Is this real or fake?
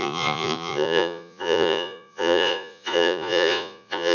fake